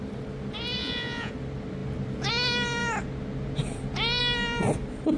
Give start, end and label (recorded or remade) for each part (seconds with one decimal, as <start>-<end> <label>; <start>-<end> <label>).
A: 0.0-0.8 recorded; 0.8-1.3 remade; 1.3-5.2 recorded